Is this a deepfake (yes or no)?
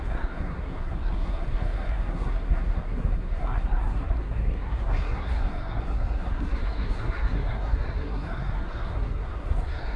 yes